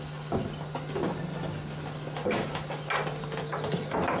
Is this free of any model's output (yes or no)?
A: yes